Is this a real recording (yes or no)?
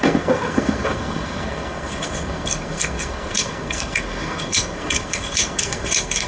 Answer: no